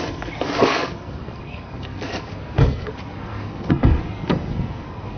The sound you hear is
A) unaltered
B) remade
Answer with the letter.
B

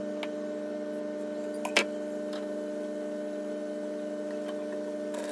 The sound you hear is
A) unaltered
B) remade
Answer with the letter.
A